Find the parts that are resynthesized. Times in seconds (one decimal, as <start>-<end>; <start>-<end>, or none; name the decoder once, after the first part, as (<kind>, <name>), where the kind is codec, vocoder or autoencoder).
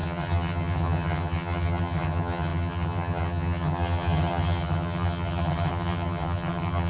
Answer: 0.0-6.9 (vocoder, HiFi-GAN)